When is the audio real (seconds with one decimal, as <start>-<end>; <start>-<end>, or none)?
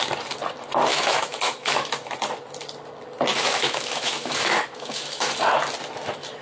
0.0-0.9; 1.9-3.3; 5.3-6.4